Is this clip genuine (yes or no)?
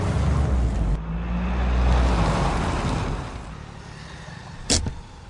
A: yes